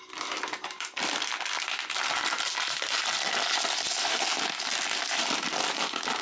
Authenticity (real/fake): real